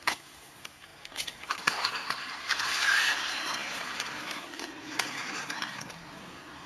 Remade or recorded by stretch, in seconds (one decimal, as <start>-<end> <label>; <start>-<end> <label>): 0.0-6.7 remade